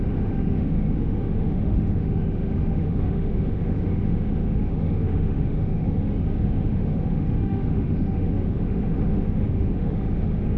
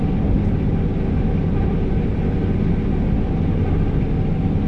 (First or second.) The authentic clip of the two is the second